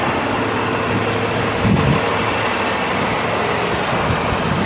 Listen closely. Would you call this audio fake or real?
real